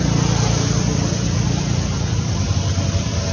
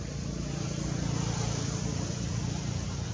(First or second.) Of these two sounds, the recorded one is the first